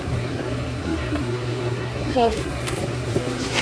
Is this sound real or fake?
fake